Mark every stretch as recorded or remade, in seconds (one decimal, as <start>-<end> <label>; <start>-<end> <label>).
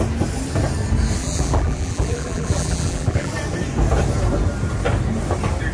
0.0-1.2 recorded; 1.2-3.3 remade; 3.3-5.7 recorded